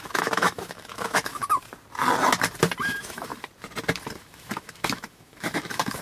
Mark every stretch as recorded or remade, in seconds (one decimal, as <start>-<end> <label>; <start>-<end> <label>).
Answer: 0.0-1.4 remade; 1.4-2.8 recorded; 2.8-3.3 remade; 3.3-4.2 recorded; 4.2-6.0 remade